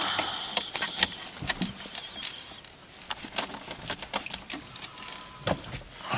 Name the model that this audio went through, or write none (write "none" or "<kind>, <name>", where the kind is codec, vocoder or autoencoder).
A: none